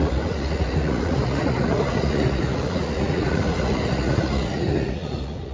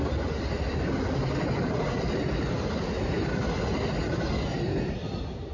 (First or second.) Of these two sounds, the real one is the second